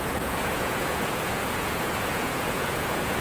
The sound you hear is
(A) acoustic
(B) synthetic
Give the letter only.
B